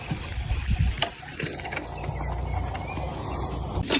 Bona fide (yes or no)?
yes